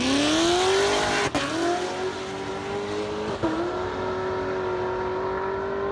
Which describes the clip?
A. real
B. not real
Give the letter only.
A